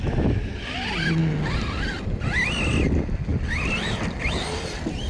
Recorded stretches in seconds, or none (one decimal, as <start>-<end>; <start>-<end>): 0.0-5.1